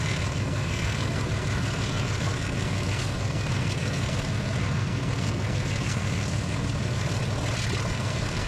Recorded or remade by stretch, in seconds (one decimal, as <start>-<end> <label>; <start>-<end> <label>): 0.0-7.2 remade; 7.2-7.9 recorded; 7.9-8.5 remade

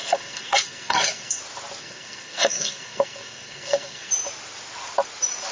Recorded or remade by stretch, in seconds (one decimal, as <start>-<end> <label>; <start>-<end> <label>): 0.0-1.4 remade; 1.4-1.8 recorded; 1.8-4.1 remade; 4.1-5.5 recorded

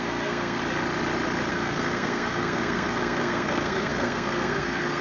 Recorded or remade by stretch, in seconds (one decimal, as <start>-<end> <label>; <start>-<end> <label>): 0.0-0.6 remade; 0.6-1.5 recorded; 1.5-5.0 remade

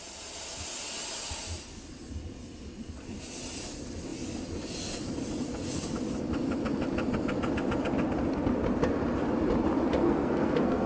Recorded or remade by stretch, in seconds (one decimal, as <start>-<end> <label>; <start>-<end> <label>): 0.0-10.0 recorded; 10.0-10.9 remade

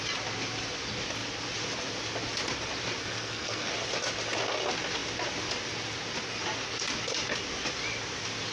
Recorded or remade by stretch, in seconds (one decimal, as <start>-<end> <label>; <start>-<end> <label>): 0.0-3.0 recorded; 3.0-3.7 remade; 3.7-8.5 recorded

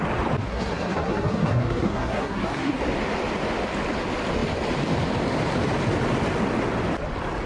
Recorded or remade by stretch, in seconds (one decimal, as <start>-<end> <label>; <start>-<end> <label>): 0.0-0.5 recorded; 0.5-2.8 remade; 2.8-7.5 recorded

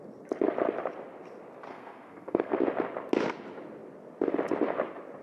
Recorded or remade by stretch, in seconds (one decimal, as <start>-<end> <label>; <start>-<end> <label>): 0.0-1.7 recorded; 1.7-2.6 remade; 2.6-5.2 recorded